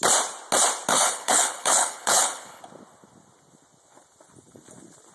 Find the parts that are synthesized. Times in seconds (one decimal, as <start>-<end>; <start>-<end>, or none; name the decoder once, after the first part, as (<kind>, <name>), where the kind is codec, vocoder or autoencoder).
0.9-2.6 (codec, HILCodec)